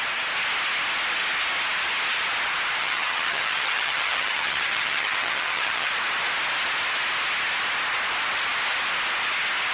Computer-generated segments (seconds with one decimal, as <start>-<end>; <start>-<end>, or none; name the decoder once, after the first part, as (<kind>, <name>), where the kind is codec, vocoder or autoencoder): 2.8-5.9 (vocoder, HiFi-GAN)